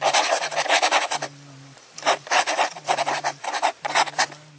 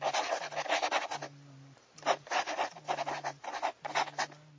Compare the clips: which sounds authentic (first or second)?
second